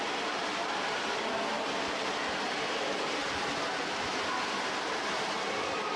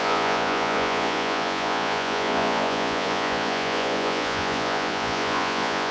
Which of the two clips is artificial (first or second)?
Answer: second